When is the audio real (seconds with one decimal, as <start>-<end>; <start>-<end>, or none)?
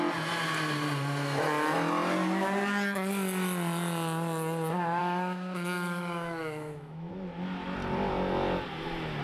0.0-5.0; 7.1-9.2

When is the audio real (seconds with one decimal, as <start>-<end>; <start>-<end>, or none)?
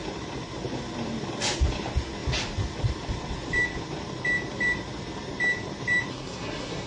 0.0-6.1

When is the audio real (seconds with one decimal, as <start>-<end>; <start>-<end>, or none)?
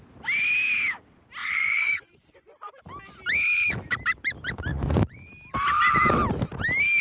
0.0-1.4; 2.7-4.7; 5.3-7.0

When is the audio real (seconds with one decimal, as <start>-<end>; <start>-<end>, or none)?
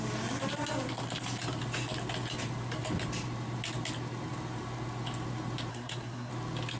0.0-5.7; 6.3-6.8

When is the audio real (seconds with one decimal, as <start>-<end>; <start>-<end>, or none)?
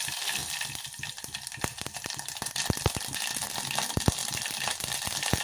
0.0-4.2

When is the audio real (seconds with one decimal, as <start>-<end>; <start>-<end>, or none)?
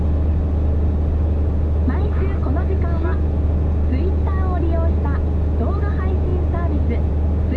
0.0-7.6